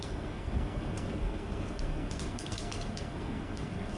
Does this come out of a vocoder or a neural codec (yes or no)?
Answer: yes